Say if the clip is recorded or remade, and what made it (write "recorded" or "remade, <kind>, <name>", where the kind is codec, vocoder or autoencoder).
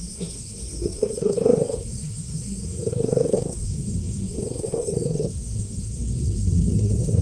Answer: remade, codec, SNAC